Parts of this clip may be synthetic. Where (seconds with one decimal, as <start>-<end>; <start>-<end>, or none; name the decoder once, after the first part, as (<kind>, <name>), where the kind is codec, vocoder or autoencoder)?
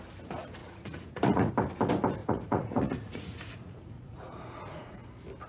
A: 0.6-1.5 (vocoder, Vocos); 2.2-5.0